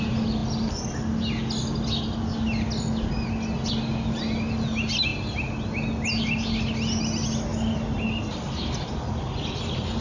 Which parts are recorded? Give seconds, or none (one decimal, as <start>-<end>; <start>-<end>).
0.0-10.0